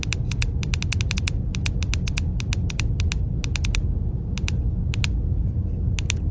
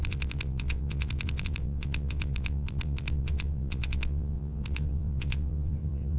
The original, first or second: first